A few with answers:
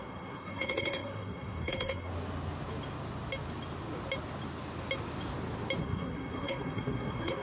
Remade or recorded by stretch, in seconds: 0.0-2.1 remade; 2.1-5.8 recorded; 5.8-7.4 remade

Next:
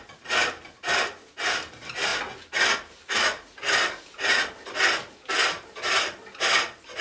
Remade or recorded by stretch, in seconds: 0.0-7.0 recorded

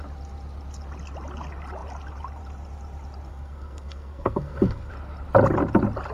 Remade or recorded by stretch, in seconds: 0.0-3.3 recorded; 3.3-4.9 remade; 4.9-6.1 recorded

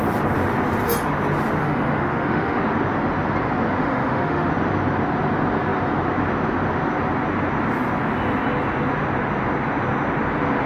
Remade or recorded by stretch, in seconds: 0.0-1.6 recorded; 1.6-2.6 remade; 2.6-3.8 recorded; 3.8-4.5 remade; 4.5-10.7 recorded

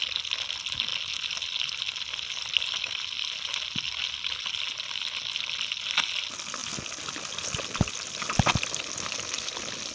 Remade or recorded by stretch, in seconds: 0.0-9.9 recorded